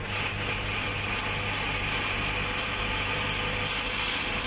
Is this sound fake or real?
real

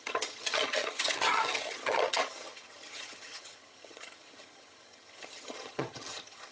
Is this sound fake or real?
fake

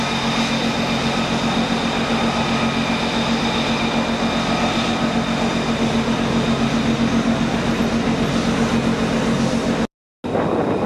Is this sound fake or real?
real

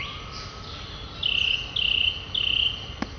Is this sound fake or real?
real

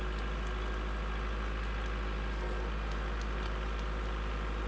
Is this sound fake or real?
real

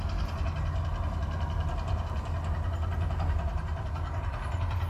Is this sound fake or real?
real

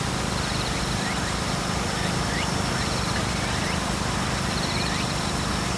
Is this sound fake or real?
real